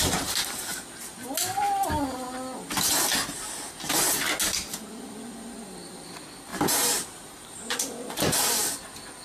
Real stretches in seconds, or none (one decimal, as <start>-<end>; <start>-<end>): 0.0-6.5; 7.6-9.2